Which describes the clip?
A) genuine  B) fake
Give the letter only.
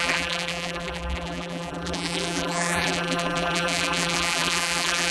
B